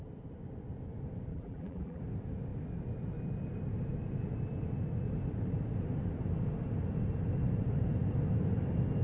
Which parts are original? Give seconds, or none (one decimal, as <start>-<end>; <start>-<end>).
0.0-1.3; 2.0-9.0